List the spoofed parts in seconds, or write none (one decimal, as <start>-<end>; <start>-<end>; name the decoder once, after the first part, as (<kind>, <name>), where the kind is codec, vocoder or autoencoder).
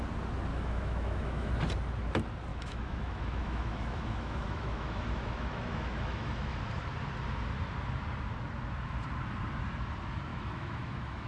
0.5-1.5 (autoencoder, DAC-VAE); 2.5-6.6; 10.3-11.3